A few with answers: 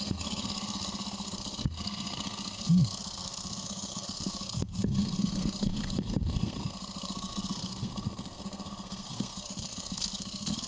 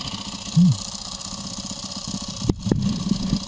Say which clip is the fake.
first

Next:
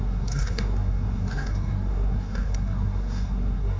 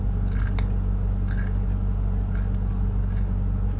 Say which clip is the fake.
first